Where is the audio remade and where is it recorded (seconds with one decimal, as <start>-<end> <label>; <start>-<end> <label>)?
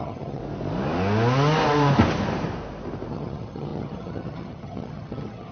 0.0-0.4 remade; 0.4-3.1 recorded; 3.1-5.5 remade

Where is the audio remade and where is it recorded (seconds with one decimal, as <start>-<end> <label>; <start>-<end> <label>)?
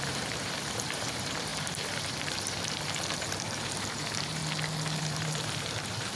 0.0-4.4 remade; 4.4-5.0 recorded; 5.0-6.2 remade